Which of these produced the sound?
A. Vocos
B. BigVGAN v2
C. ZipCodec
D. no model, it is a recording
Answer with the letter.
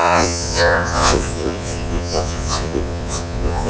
A